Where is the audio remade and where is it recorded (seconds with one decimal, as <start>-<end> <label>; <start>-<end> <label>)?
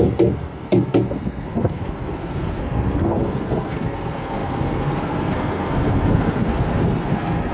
0.0-7.5 remade